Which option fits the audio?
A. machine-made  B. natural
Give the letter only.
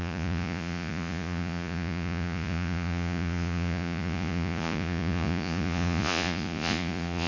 A